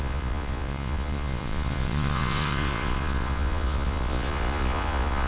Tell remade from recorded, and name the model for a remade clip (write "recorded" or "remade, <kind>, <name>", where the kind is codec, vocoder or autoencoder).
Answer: remade, vocoder, Vocos